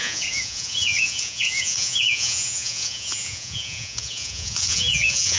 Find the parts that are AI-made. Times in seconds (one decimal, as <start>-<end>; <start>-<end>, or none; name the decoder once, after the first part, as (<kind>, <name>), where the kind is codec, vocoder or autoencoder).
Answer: 0.0-5.4 (vocoder, Vocos)